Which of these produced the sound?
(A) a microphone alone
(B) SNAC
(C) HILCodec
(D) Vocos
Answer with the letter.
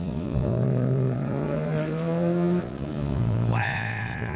D